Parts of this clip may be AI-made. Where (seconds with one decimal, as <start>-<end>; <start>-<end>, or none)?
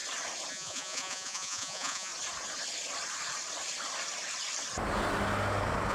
0.5-2.1